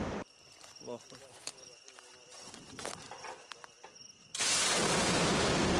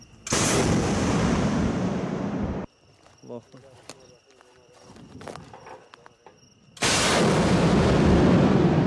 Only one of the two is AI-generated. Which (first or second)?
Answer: first